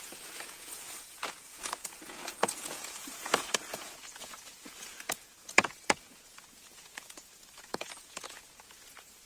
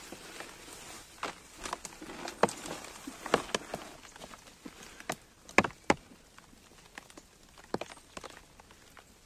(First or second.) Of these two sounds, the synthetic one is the first